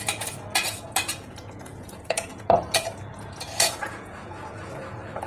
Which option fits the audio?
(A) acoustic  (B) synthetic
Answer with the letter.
B